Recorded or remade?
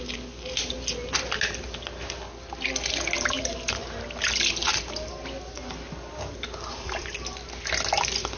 recorded